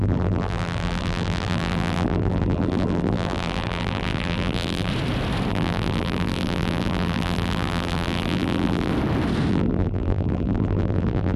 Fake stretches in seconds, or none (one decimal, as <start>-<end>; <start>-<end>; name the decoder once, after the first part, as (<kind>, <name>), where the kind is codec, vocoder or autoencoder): 0.0-4.9 (vocoder, BigVGAN v2); 5.5-8.9; 9.5-11.4